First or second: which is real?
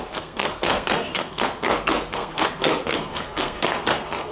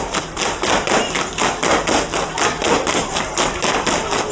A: second